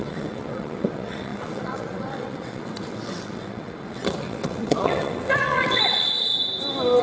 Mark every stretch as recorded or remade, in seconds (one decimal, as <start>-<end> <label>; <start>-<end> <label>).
0.0-6.3 remade; 6.3-7.0 recorded